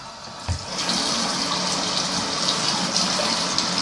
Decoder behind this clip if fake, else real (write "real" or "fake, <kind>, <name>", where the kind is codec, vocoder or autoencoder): real